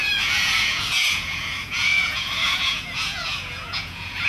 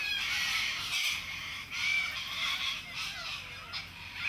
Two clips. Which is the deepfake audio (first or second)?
first